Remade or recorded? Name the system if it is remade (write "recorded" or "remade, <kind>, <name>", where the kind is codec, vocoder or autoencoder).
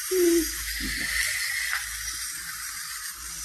recorded